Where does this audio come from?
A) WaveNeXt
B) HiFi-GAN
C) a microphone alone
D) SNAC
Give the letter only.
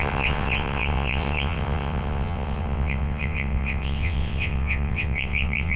A